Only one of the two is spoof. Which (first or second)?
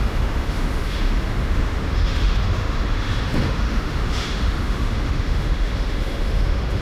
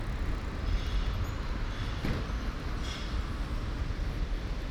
first